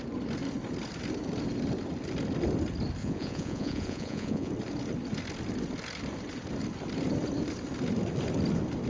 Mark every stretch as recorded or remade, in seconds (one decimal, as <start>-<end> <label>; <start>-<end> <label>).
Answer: 0.0-3.0 recorded; 3.0-4.5 remade; 4.5-8.9 recorded